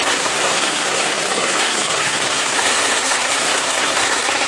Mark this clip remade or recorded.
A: remade